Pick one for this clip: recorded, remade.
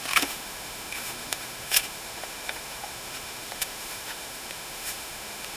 remade